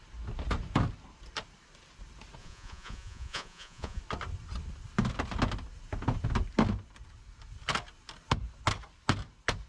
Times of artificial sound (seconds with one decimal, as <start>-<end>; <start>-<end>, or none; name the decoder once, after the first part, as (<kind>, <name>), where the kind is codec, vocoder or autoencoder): 2.4-4.0 (vocoder, Vocos)